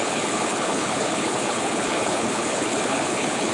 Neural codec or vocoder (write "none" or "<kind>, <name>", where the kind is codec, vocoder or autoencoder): codec, HILCodec